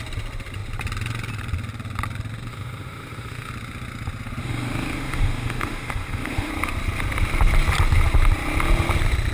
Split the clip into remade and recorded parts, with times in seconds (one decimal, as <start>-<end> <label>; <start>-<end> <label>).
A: 0.0-2.5 recorded; 2.5-3.5 remade; 3.5-4.4 recorded; 4.4-6.5 remade; 6.5-9.3 recorded